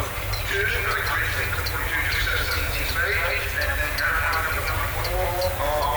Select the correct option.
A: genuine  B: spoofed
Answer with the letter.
A